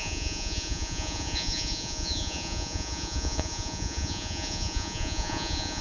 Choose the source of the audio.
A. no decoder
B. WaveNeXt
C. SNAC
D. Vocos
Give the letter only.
D